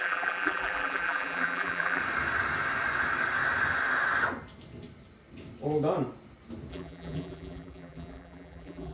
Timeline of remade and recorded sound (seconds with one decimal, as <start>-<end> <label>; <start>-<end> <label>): 0.0-2.0 remade; 2.0-6.7 recorded; 6.7-8.9 remade